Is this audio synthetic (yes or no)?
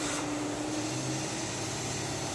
yes